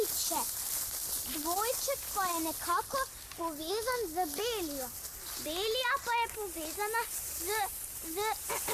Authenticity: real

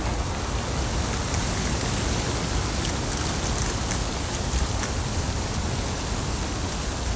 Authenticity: real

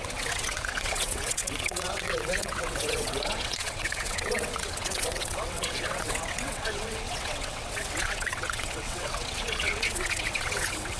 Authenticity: fake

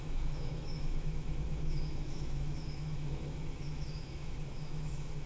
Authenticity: fake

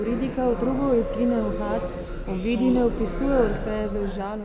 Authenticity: real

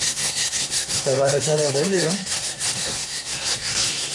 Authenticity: fake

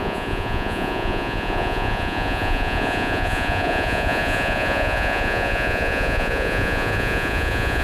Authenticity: fake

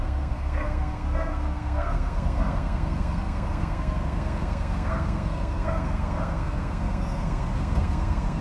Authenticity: fake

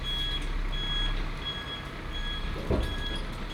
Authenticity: real